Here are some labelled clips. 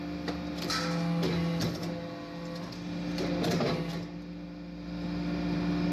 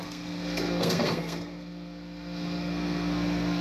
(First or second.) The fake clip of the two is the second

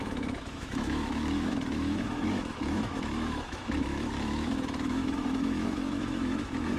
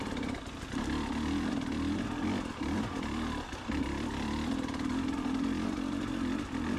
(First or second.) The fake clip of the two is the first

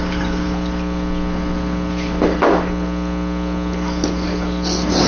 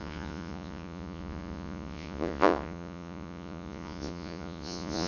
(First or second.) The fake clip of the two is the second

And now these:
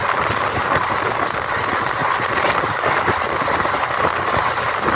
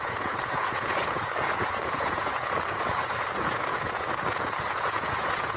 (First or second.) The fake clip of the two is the second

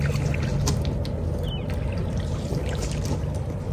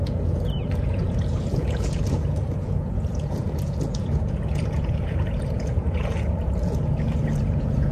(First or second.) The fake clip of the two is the second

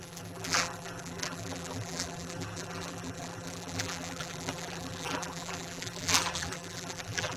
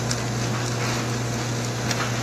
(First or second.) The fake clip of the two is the first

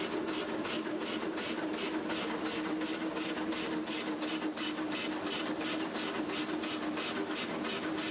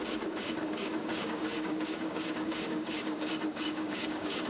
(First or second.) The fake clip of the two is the second